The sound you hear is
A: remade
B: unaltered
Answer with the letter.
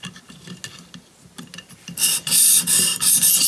B